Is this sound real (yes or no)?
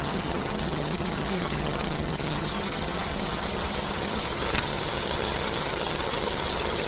no